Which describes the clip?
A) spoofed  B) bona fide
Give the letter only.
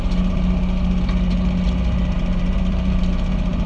B